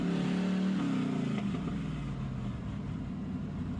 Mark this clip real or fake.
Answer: real